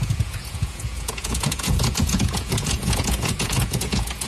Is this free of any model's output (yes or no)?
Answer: no